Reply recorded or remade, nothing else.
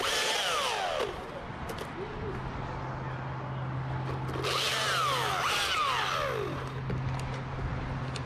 recorded